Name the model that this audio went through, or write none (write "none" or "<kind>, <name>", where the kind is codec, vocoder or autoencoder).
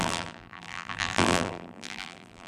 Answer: vocoder, BigVGAN v2